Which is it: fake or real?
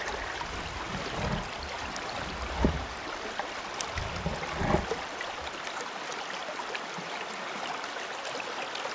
real